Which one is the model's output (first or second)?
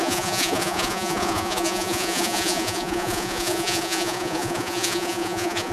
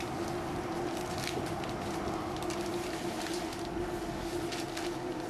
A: first